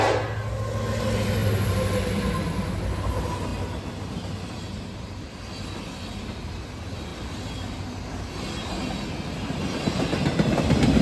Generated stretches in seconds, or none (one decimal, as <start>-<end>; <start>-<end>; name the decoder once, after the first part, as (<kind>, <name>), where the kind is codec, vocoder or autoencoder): none